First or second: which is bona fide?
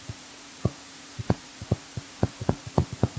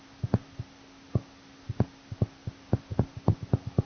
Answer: second